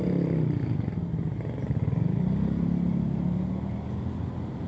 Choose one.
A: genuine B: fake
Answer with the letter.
A